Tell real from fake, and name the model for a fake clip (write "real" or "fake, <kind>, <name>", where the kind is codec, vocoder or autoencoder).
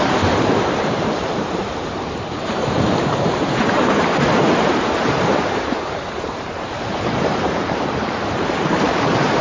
fake, vocoder, BigVGAN v2